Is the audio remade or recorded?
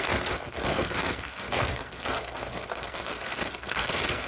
remade